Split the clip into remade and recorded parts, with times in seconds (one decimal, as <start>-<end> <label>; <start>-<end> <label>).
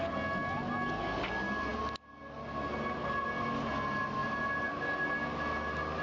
0.0-6.0 recorded